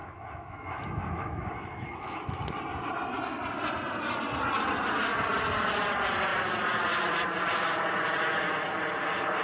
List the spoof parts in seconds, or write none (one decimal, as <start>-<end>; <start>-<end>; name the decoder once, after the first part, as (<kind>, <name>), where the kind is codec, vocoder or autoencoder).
0.0-2.6 (autoencoder, DAC-VAE)

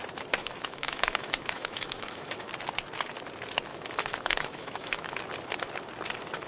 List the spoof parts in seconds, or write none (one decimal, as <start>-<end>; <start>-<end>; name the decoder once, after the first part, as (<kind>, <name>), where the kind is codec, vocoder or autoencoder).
0.4-2.5 (autoencoder, DAC-VAE); 3.7-5.2

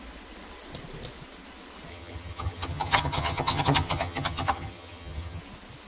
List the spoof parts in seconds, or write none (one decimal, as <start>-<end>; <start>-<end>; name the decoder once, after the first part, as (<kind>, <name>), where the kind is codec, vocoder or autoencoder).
1.9-5.4 (vocoder, HiFi-GAN)

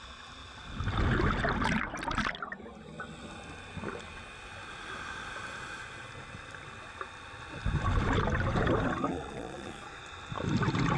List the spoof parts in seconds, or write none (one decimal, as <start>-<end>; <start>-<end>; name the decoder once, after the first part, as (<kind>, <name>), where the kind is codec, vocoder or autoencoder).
9.1-10.0 (vocoder, Vocos)

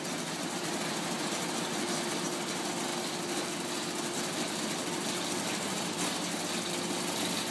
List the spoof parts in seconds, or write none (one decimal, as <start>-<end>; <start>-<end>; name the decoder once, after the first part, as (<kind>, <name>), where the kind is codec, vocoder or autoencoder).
none

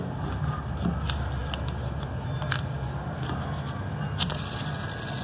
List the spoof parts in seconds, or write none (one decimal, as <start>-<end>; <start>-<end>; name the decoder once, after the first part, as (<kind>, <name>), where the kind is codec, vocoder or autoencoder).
none

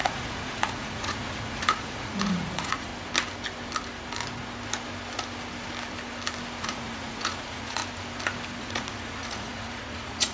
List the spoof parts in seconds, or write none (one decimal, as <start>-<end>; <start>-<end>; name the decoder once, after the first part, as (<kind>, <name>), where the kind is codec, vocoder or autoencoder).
0.0-2.9 (vocoder, Vocos); 6.6-7.8; 8.6-10.3

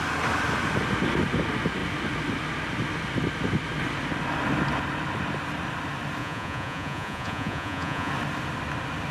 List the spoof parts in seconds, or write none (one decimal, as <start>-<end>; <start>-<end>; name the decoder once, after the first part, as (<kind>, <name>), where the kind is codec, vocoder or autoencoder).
6.2-8.1 (vocoder, Vocos)